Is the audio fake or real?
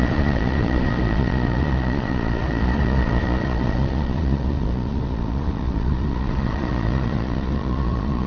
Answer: fake